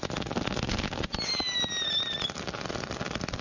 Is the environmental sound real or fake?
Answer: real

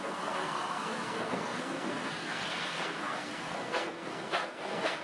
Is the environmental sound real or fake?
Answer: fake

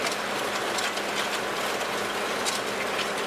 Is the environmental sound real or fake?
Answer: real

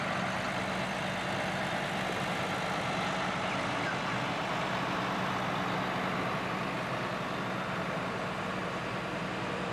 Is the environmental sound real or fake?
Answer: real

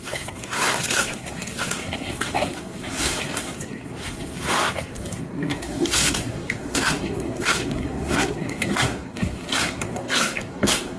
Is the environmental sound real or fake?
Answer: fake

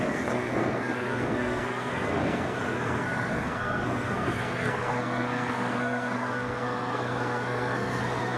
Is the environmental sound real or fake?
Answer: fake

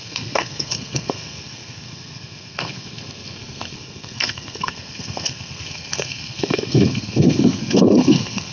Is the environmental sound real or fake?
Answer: fake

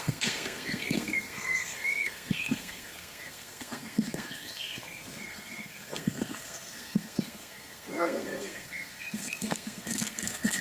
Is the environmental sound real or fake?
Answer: fake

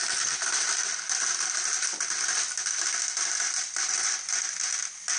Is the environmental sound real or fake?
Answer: real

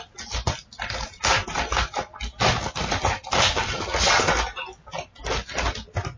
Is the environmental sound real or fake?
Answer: real